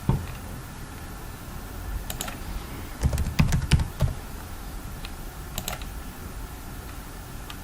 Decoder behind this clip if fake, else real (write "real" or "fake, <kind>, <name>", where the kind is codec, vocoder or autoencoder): real